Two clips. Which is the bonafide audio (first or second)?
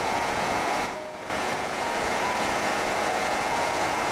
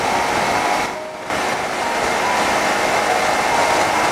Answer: second